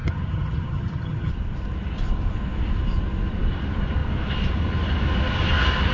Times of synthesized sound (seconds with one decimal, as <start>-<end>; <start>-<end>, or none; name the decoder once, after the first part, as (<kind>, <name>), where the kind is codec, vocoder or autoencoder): 0.0-1.3 (vocoder, HiFi-GAN)